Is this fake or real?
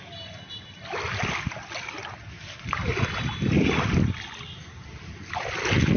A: real